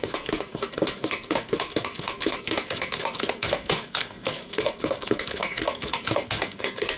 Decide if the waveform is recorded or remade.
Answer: remade